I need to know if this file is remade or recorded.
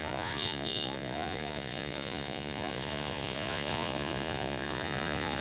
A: remade